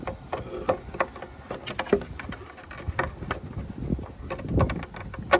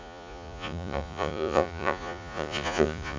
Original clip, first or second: first